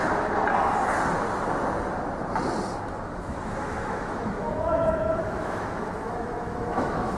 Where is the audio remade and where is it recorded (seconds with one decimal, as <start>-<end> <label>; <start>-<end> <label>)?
0.0-2.7 recorded; 2.7-7.2 remade